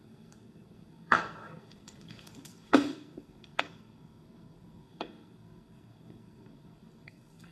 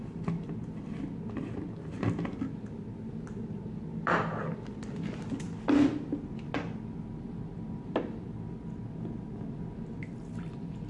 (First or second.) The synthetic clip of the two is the first